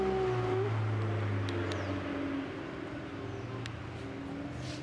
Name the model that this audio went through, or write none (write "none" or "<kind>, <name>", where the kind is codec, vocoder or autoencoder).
none